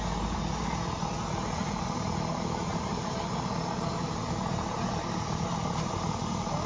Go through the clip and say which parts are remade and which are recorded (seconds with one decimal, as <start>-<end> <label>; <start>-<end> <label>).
0.0-2.7 recorded; 2.7-6.7 remade